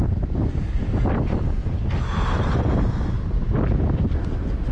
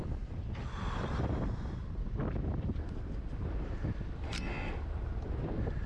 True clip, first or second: first